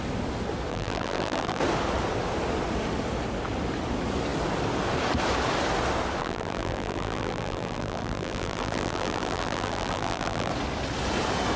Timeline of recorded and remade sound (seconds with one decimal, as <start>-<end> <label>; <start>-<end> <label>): 0.0-0.7 recorded; 0.7-1.6 remade; 1.6-6.2 recorded; 6.2-10.5 remade; 10.5-11.6 recorded